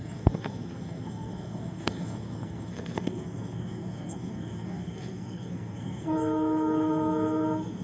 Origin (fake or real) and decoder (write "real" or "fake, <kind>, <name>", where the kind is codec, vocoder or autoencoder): fake, codec, SNAC